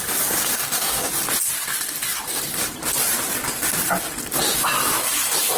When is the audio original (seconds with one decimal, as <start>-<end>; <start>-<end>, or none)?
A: 0.0-0.5; 1.1-5.6